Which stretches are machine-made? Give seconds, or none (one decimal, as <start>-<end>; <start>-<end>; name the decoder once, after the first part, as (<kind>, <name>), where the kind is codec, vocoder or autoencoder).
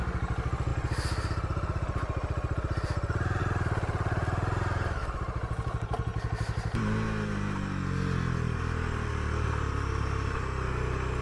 none